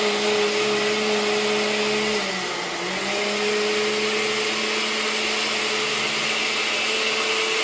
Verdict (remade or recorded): recorded